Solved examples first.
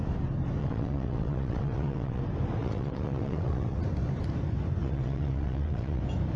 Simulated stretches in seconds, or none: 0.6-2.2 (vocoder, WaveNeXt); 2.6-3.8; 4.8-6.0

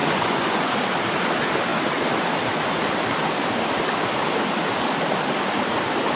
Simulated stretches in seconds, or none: 0.0-0.7 (vocoder, Vocos)

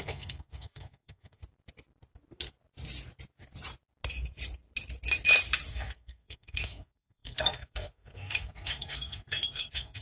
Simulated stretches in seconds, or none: 0.0-1.4 (codec, SNAC); 5.7-10.0

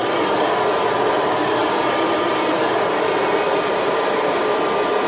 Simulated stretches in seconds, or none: 1.6-4.6 (vocoder, BigVGAN v2)

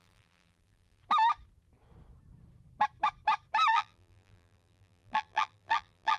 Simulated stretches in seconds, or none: 0.0-1.0 (vocoder, BigVGAN v2); 3.7-6.2

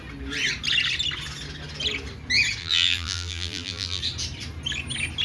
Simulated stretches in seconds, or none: 2.6-4.0 (vocoder, BigVGAN v2)

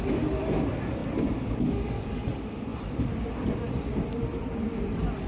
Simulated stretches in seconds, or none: none

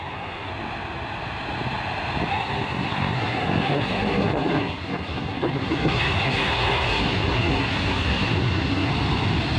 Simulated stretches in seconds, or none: 0.0-0.5 (codec, SNAC); 2.3-8.9